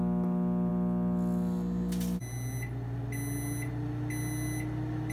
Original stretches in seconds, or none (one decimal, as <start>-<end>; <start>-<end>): 0.0-5.1